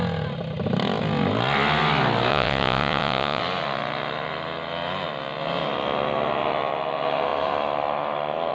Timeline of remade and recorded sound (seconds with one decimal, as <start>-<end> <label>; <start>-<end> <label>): 0.0-2.3 recorded; 2.3-3.4 remade; 3.4-8.5 recorded